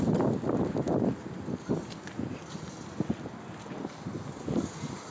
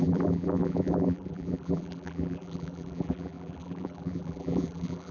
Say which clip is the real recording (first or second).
first